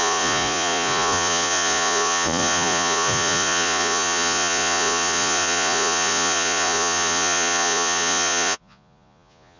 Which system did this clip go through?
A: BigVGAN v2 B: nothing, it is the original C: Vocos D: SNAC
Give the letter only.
C